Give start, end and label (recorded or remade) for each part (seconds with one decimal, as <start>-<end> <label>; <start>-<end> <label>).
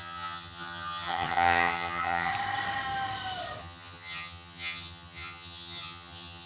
0.0-2.3 remade; 2.3-3.6 recorded; 3.6-6.5 remade